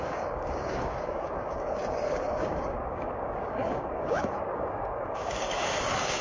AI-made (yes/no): yes